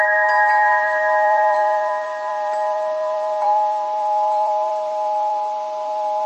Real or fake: fake